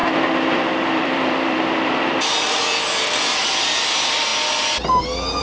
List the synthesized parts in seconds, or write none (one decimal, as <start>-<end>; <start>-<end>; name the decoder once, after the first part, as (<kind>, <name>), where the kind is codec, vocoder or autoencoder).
0.0-4.3 (vocoder, BigVGAN v2)